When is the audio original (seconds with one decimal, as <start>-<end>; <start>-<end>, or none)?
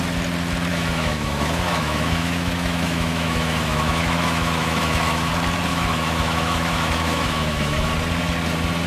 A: 0.0-0.7; 5.3-5.7; 7.9-8.9